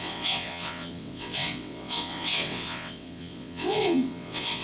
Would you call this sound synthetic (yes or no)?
yes